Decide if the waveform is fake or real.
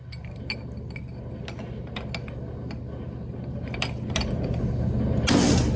real